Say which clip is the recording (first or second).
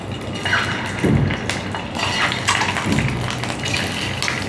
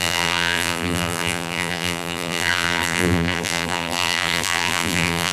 first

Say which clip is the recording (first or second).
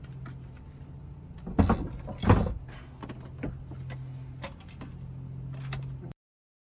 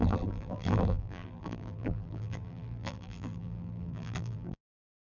first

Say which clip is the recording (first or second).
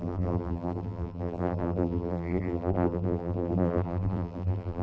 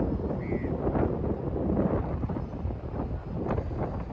second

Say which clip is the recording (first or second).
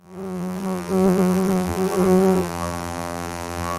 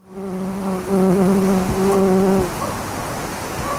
second